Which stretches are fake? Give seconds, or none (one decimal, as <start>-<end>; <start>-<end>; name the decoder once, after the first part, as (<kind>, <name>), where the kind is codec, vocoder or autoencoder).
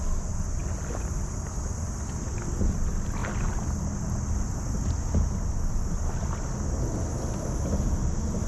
none